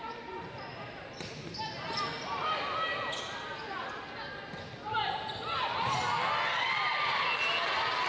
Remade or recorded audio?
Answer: recorded